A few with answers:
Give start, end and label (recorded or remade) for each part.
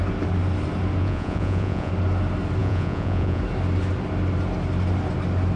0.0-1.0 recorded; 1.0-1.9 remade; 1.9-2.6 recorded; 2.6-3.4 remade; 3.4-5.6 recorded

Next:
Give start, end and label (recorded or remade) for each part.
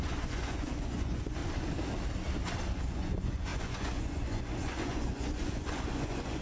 0.0-1.4 remade; 1.4-2.8 recorded; 2.8-6.4 remade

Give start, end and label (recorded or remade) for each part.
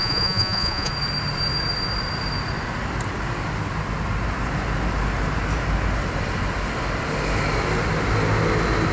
0.0-0.9 remade; 0.9-8.9 recorded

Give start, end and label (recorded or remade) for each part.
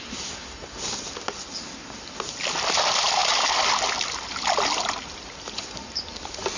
0.0-6.6 recorded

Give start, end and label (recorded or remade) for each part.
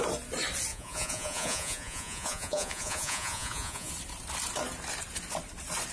0.0-0.7 recorded; 0.7-3.9 remade; 3.9-5.9 recorded